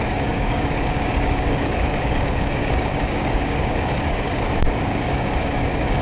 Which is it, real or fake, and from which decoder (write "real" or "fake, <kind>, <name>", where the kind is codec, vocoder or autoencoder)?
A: fake, codec, DAC